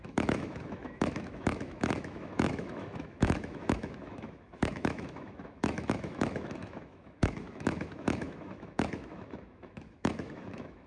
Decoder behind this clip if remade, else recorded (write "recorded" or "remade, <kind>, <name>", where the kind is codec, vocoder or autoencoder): remade, autoencoder, DAC-VAE